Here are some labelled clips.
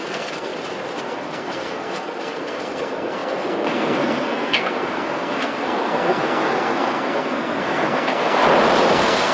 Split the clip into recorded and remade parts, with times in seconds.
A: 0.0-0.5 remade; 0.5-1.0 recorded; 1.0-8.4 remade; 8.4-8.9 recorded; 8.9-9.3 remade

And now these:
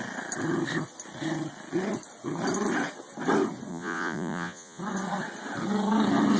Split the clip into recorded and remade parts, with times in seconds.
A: 0.0-3.7 recorded; 3.7-4.8 remade; 4.8-6.4 recorded

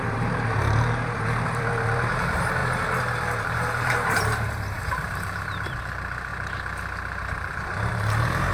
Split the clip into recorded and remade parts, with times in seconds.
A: 0.0-2.6 remade; 2.6-3.4 recorded; 3.4-8.5 remade

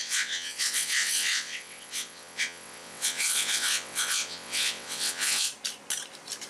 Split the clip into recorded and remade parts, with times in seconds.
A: 0.0-5.5 remade; 5.5-6.5 recorded